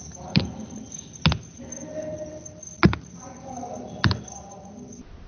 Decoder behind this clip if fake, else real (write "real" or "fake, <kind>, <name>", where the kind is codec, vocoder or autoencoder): real